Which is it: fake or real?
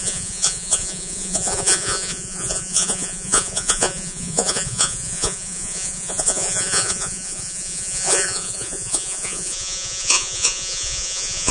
fake